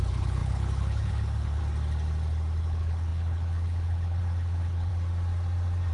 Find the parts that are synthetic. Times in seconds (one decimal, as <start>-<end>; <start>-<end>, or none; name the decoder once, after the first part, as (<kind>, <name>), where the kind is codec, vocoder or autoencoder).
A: 0.0-1.6 (codec, HILCodec); 2.6-4.9